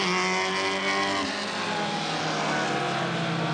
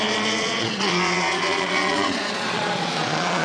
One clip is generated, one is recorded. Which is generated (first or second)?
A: second